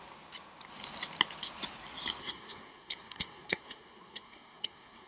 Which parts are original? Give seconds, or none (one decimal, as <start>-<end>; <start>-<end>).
0.0-2.2